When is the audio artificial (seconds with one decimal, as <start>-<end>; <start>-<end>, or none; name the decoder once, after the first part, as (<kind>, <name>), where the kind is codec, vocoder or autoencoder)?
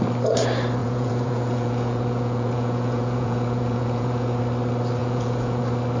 0.8-4.4 (vocoder, Vocos); 5.0-5.6